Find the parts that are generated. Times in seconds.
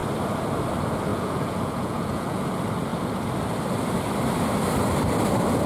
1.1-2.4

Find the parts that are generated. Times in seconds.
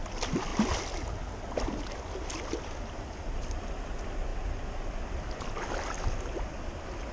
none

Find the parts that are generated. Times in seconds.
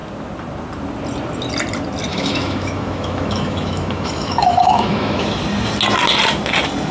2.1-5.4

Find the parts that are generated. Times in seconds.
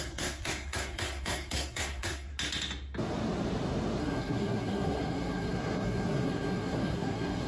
0.0-2.3; 4.0-7.5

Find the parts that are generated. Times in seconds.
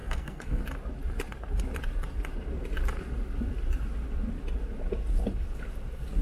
0.0-0.6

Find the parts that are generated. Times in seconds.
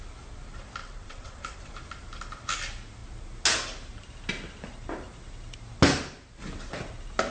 0.8-1.7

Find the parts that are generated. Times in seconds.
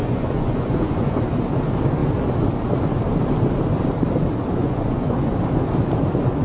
0.0-1.2; 4.6-5.3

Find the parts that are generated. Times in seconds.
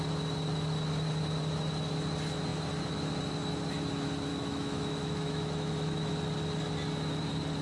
4.3-6.1